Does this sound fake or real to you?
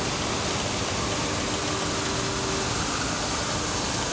real